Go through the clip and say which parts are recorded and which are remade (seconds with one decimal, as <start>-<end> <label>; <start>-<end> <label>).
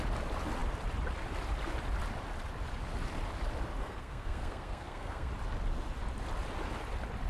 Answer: 0.0-3.8 recorded; 3.8-5.3 remade; 5.3-7.3 recorded